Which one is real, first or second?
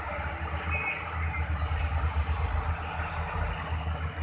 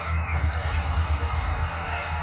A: first